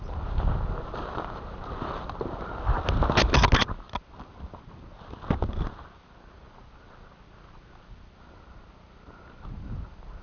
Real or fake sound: real